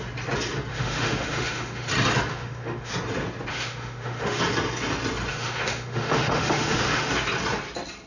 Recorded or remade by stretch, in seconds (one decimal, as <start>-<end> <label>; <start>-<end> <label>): 0.0-0.7 recorded; 0.7-1.9 remade; 1.9-2.3 recorded; 2.3-2.9 remade; 2.9-3.5 recorded; 3.5-4.4 remade; 4.4-5.3 recorded; 5.3-7.1 remade; 7.1-8.1 recorded